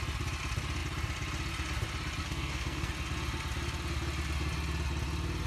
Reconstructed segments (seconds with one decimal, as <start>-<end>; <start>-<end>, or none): 2.2-2.9